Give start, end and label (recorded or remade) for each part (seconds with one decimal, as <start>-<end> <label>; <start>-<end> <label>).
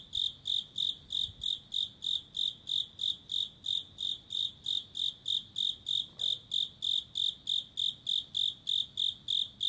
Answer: 0.0-9.7 recorded